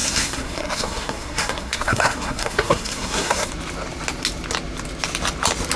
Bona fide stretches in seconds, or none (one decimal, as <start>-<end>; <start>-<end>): 3.5-5.8